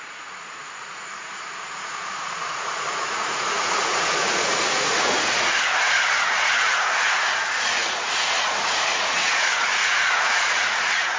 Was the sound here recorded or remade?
remade